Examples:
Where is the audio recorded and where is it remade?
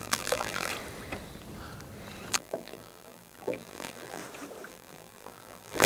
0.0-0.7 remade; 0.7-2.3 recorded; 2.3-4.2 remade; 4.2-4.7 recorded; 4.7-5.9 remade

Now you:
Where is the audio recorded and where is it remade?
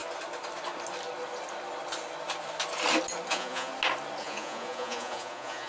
0.0-3.3 recorded; 3.3-3.7 remade; 3.7-4.2 recorded; 4.2-5.7 remade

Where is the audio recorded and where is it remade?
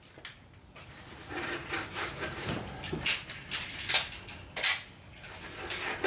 0.0-1.6 recorded; 1.6-2.8 remade; 2.8-6.1 recorded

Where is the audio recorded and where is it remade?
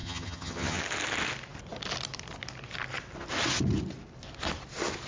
0.0-0.8 remade; 0.8-5.1 recorded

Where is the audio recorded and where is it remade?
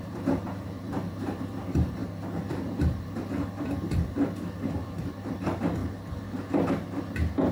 0.0-5.8 remade; 5.8-7.5 recorded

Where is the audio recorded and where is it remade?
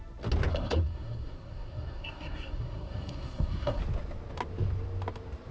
0.0-0.5 recorded; 0.5-3.8 remade; 3.8-5.5 recorded